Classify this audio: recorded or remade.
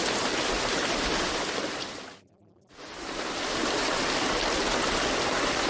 recorded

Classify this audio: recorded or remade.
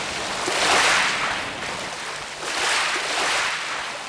remade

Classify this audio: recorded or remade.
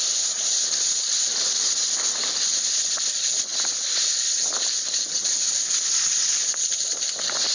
recorded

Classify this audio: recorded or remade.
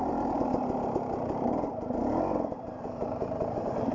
remade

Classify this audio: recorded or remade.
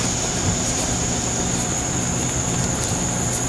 recorded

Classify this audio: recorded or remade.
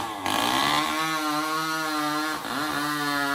recorded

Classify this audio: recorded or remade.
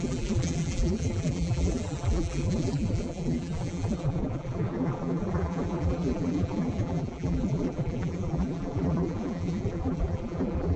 remade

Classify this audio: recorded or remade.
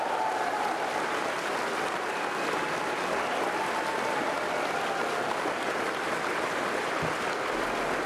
recorded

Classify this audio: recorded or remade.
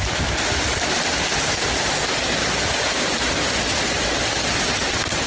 recorded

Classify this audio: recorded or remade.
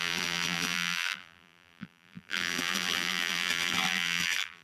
remade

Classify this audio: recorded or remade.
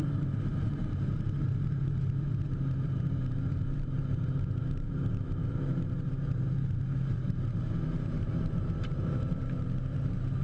remade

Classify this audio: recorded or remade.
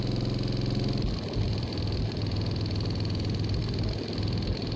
remade